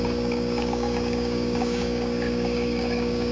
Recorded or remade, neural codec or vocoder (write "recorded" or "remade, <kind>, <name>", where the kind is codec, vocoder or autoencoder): remade, codec, DAC